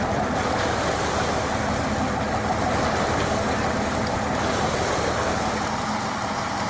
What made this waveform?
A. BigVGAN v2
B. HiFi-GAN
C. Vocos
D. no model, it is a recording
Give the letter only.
D